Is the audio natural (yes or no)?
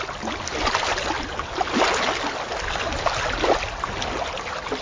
yes